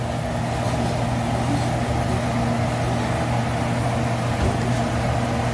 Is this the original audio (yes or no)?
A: yes